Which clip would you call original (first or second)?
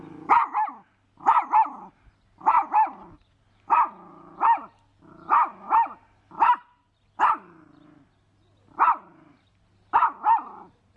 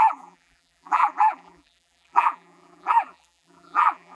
first